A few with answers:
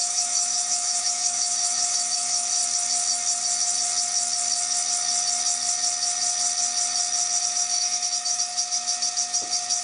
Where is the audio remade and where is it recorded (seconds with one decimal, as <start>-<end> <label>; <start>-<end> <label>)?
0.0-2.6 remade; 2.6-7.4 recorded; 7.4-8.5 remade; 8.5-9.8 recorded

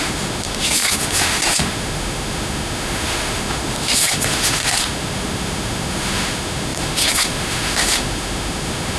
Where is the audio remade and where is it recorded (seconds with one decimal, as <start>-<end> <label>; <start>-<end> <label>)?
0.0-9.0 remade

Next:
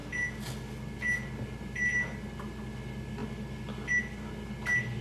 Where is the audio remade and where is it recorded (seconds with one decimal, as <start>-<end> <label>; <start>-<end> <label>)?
0.0-5.0 recorded